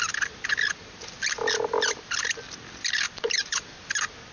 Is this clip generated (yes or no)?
no